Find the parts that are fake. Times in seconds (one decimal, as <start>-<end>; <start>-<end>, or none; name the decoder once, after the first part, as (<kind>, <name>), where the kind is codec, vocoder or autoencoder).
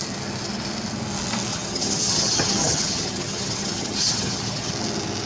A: 1.5-4.7 (vocoder, HiFi-GAN)